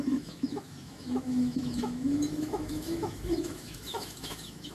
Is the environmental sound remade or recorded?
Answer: remade